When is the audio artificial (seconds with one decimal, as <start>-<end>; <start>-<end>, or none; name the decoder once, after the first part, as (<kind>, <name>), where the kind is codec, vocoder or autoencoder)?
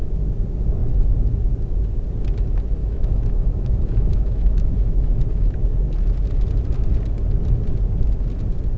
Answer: 2.8-5.5 (autoencoder, DAC-VAE)